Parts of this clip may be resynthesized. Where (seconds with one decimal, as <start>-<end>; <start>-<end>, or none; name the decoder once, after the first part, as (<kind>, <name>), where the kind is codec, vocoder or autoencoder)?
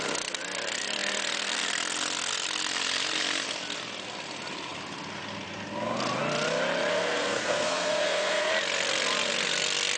6.9-8.5 (codec, SNAC)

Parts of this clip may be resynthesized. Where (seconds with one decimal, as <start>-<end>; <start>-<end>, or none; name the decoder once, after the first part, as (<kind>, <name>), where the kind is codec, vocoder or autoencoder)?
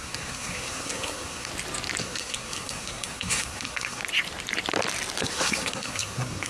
0.0-1.5 (codec, SNAC); 2.0-4.0; 5.2-6.5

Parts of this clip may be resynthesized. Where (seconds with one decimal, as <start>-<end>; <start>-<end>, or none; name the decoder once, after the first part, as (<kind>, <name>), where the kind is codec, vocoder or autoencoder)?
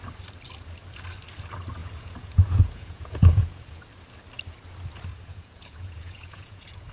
1.8-3.8 (vocoder, Vocos); 5.1-6.9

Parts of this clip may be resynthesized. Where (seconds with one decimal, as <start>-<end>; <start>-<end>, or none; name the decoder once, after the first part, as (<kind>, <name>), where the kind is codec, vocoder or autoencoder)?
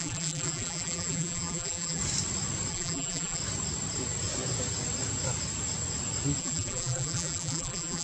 0.0-2.0 (vocoder, BigVGAN v2); 2.7-3.4; 6.4-8.0